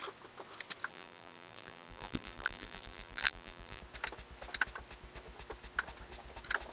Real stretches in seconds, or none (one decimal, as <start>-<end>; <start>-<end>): 0.0-0.9; 3.8-6.7